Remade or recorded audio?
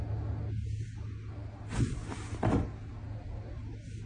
recorded